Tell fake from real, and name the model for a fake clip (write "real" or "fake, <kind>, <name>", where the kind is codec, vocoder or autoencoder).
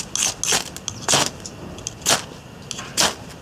real